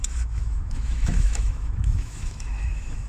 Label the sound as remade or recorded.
remade